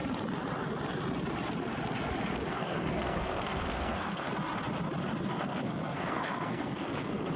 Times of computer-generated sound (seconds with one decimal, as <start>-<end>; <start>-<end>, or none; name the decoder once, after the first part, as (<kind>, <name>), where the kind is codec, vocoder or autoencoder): 2.5-4.3 (codec, SNAC); 5.3-7.4